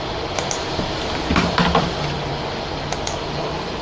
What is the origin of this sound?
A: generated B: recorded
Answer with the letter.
B